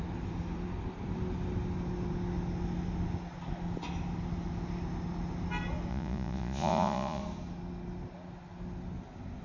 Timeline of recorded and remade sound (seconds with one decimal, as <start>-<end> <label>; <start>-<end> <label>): 0.0-5.9 recorded; 5.9-7.2 remade; 7.2-9.4 recorded